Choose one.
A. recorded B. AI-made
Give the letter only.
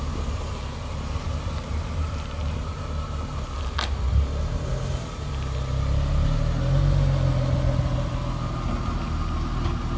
A